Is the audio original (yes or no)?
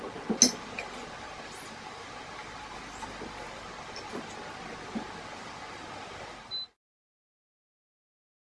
yes